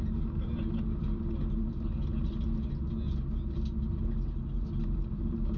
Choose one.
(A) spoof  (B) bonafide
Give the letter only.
B